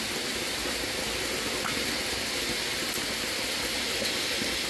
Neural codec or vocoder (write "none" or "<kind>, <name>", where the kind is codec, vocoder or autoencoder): none